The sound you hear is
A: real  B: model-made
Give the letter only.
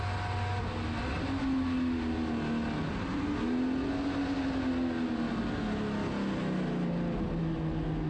A